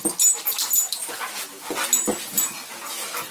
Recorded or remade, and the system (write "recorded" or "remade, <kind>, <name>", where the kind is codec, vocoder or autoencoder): recorded